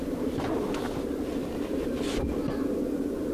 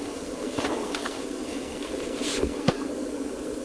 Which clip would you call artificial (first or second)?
second